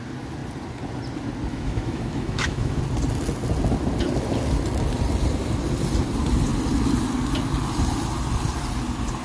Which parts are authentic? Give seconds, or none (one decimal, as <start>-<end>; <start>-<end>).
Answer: 0.0-1.5; 2.8-9.2